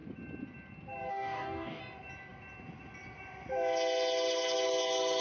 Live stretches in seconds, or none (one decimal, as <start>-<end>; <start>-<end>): 0.0-1.1; 1.8-5.2